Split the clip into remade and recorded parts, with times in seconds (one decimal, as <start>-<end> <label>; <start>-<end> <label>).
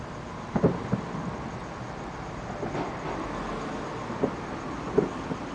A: 0.0-5.5 recorded